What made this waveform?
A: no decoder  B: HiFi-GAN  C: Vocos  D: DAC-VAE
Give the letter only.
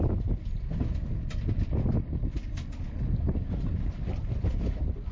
A